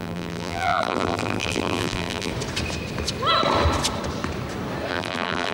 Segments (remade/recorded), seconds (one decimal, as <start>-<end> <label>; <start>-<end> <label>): 0.0-2.3 remade; 2.3-4.9 recorded; 4.9-5.5 remade